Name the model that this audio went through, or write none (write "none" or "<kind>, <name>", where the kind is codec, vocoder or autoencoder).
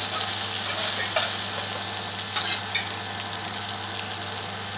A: none